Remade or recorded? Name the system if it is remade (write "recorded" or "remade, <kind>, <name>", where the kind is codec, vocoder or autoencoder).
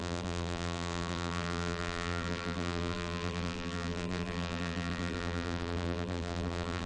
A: remade, vocoder, BigVGAN v2